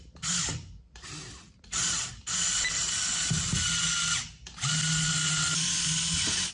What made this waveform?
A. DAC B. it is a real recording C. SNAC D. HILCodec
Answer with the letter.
B